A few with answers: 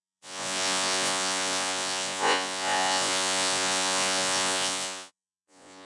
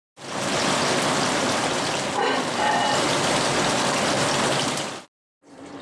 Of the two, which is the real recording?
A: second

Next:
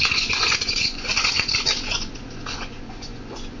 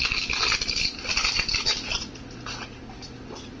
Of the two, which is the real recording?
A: second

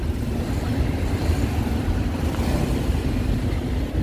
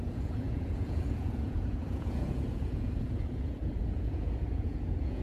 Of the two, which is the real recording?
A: first